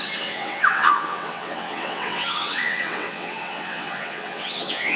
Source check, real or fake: fake